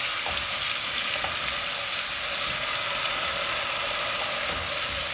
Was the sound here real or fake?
real